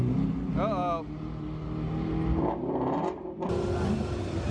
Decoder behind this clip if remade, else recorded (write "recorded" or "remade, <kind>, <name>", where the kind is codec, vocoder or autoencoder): recorded